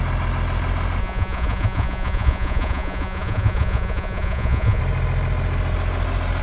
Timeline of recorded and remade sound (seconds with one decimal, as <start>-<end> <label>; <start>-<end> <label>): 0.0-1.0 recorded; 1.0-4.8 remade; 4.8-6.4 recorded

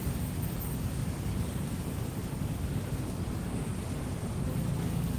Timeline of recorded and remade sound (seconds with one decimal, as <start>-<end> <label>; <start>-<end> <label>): 0.0-3.7 remade; 3.7-4.5 recorded; 4.5-5.2 remade

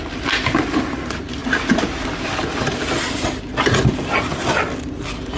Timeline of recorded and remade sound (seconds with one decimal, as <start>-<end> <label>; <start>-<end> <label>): 0.0-5.4 recorded